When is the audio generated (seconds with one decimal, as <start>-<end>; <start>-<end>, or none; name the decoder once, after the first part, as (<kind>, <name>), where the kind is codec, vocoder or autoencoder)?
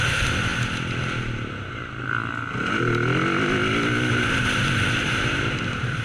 0.0-0.5 (vocoder, BigVGAN v2); 4.1-6.0